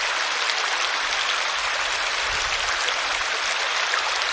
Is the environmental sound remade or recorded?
recorded